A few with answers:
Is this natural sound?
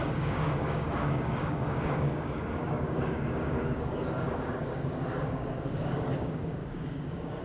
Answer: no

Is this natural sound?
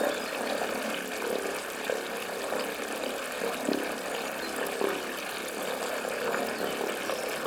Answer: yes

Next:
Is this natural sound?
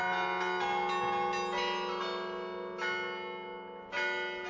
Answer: yes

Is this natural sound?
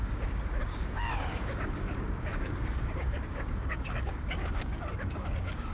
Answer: no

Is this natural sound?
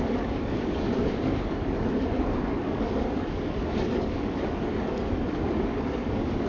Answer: no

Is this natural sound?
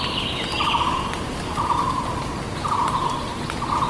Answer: yes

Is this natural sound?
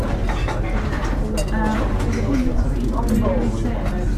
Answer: yes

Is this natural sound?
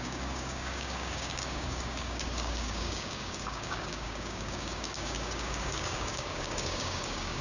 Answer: no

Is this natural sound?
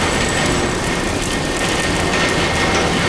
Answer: yes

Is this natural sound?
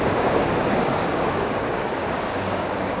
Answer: no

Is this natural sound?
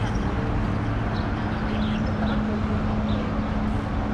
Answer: yes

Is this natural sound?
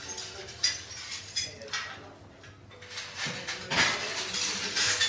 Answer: yes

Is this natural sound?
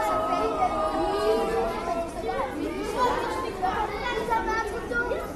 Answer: yes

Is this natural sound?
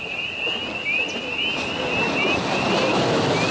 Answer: yes